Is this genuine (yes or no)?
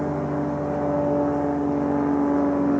yes